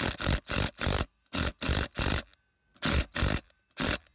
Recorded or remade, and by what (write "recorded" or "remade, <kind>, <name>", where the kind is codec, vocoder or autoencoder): recorded